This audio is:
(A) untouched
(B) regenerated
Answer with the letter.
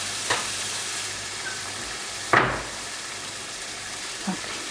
B